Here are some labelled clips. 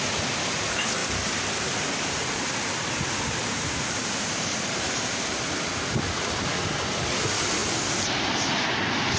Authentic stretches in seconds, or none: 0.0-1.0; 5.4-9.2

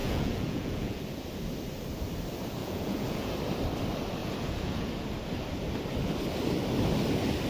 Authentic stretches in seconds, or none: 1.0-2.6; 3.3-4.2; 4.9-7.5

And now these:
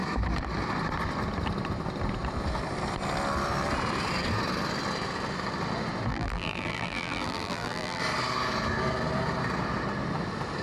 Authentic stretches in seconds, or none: 0.0-6.1; 8.0-10.6

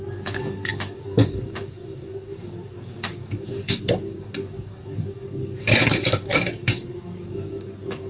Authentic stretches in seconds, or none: none

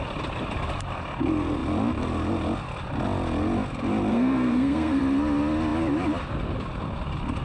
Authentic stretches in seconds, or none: 0.0-4.1; 5.0-7.4

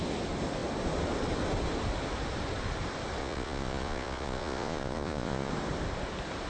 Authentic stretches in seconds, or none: 0.0-3.2; 5.5-6.5